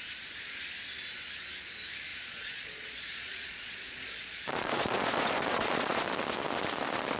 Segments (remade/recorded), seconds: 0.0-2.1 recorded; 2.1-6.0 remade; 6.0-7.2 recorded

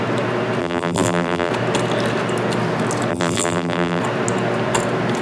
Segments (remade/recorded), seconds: 0.0-0.6 recorded; 0.6-1.5 remade; 1.5-3.1 recorded; 3.1-4.0 remade; 4.0-5.2 recorded